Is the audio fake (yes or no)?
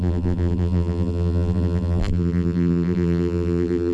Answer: yes